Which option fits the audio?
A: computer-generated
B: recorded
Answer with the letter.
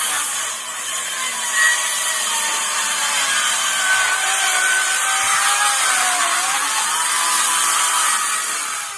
B